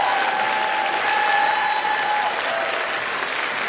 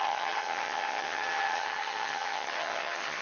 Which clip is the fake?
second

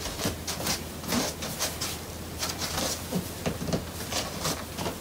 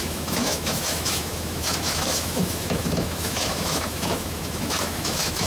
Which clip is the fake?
second